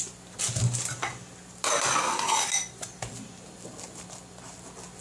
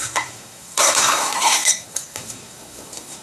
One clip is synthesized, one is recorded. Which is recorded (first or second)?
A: first